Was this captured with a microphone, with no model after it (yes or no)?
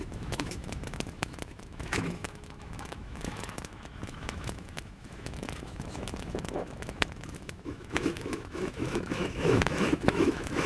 no